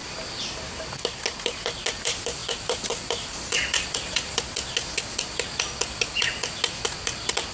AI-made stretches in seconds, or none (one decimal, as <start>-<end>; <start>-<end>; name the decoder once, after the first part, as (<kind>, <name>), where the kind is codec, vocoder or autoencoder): 2.4-4.5 (vocoder, BigVGAN v2)